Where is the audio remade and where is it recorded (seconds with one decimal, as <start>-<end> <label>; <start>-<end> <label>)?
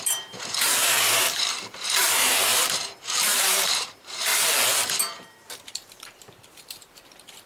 0.0-4.3 remade; 4.3-4.9 recorded; 4.9-7.5 remade